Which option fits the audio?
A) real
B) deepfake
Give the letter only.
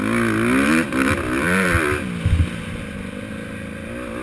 A